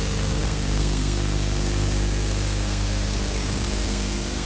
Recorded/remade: remade